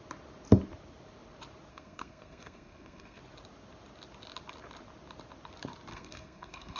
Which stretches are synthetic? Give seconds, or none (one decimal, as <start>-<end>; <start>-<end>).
1.7-3.2; 5.9-6.8